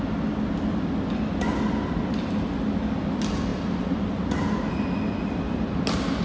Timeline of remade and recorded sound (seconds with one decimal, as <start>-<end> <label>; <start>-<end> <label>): 0.0-6.2 recorded